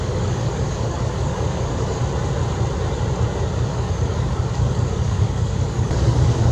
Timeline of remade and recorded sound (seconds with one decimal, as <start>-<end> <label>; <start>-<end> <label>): 0.0-2.0 remade; 2.0-3.7 recorded; 3.7-6.5 remade